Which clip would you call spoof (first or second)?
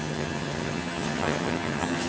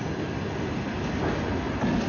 first